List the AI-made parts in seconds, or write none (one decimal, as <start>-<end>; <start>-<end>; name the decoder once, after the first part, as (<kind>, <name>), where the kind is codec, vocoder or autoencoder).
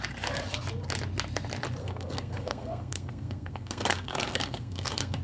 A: 1.8-5.2 (codec, SNAC)